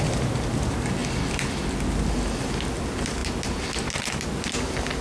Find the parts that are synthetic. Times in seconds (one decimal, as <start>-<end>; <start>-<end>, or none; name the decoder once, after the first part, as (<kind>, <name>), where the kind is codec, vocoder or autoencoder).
none